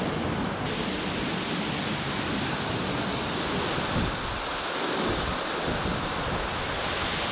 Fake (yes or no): no